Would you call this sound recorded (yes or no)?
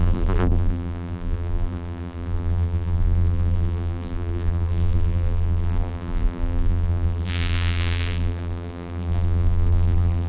no